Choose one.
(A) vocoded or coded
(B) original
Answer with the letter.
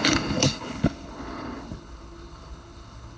A